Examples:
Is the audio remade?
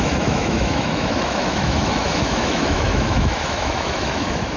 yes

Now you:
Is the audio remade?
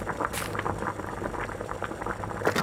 no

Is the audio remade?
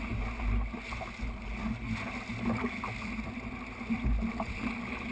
no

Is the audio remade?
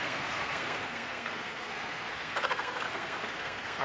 yes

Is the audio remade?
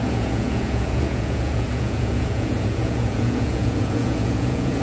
yes